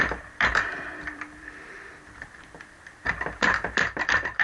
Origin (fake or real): fake